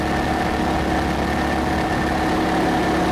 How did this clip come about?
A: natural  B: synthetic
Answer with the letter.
A